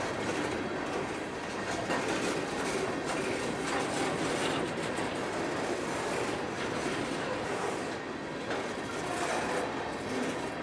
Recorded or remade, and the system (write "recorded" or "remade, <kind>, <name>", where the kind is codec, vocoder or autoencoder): recorded